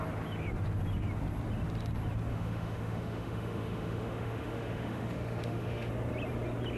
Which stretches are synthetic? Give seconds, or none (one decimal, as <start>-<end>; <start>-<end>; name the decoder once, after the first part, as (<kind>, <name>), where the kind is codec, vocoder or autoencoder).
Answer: 2.3-5.9 (autoencoder, DAC-VAE)